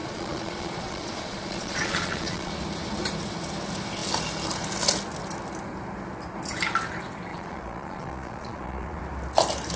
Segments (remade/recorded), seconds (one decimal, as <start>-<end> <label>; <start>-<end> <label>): 0.0-2.5 remade; 2.5-7.3 recorded; 7.3-9.0 remade; 9.0-9.8 recorded